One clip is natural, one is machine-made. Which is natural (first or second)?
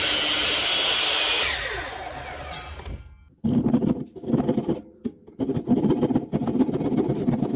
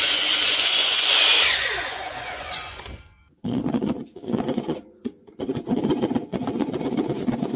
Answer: first